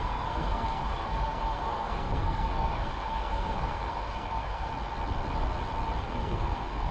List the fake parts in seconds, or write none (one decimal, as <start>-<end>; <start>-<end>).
0.0-4.7; 6.0-6.9